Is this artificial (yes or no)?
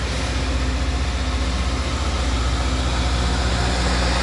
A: no